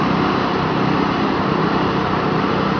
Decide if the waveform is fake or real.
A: real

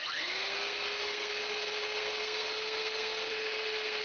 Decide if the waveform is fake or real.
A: fake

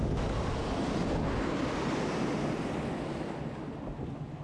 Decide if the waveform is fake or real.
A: real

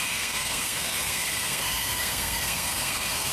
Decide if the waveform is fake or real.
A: fake